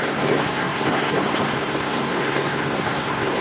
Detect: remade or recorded remade